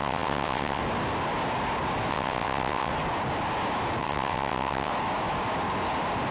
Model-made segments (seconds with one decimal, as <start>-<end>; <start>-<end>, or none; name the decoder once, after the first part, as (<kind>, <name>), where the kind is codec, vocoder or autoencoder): 0.0-0.8 (vocoder, WaveNeXt); 2.1-2.9; 4.0-4.9